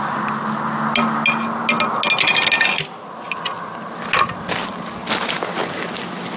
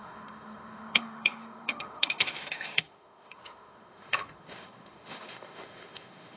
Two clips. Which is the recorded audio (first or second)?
first